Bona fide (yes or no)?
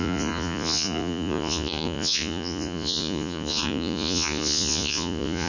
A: no